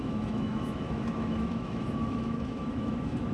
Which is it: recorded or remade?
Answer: remade